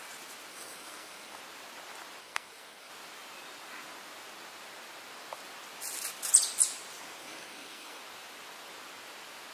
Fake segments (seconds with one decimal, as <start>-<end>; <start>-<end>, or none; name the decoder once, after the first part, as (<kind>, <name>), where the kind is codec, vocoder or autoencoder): 0.5-1.4 (codec, SNAC); 2.2-2.9; 7.2-8.0